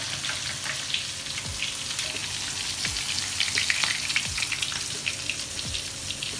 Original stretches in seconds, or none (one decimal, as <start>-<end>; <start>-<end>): 0.0-6.4